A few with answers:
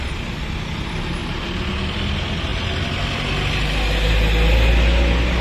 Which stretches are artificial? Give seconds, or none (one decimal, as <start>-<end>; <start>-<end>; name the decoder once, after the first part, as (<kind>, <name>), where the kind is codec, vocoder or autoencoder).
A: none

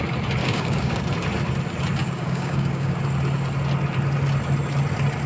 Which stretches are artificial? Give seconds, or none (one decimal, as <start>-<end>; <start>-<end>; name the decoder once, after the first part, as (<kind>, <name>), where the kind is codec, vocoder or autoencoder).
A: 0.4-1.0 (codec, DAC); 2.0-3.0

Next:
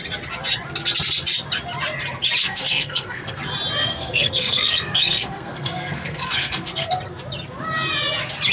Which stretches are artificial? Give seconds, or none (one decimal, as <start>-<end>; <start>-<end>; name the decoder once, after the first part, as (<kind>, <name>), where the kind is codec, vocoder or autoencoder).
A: 2.4-3.4 (codec, SNAC); 3.8-7.0

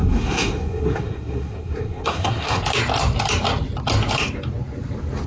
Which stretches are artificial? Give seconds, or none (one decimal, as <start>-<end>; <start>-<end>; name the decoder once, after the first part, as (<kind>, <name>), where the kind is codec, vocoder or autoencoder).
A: 0.0-2.6 (codec, SNAC)

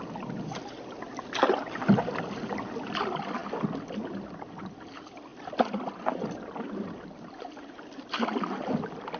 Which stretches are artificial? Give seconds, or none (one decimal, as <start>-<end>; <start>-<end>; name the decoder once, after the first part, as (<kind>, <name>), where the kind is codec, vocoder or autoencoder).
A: none

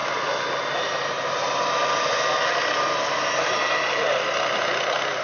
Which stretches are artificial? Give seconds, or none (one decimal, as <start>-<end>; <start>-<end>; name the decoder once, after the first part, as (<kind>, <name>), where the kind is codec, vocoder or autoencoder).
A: none